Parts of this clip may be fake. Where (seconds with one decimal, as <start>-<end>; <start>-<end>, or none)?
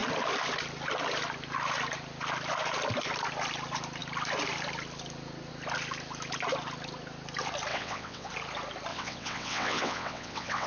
7.7-8.3; 8.9-10.7